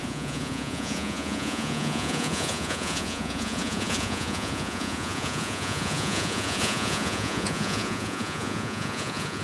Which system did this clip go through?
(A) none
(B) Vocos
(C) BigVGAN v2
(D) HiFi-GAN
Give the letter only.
B